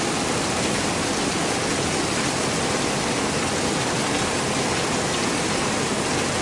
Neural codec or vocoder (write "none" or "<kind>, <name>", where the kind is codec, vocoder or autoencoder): none